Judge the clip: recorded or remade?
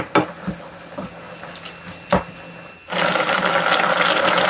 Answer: recorded